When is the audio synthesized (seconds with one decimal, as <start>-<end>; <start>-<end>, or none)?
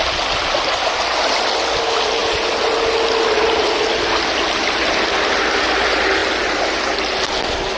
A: 6.2-7.3